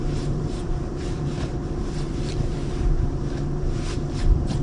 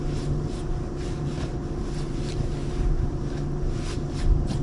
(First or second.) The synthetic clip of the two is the first